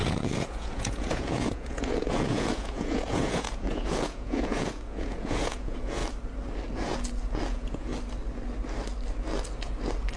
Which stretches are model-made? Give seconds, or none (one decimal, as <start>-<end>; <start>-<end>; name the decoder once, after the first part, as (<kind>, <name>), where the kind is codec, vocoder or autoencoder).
0.0-6.0 (vocoder, Vocos); 7.5-7.9